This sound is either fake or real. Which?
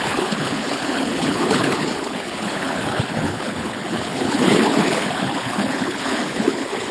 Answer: fake